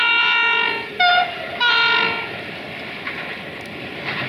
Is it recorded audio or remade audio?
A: recorded